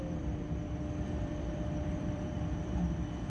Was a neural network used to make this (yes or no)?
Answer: yes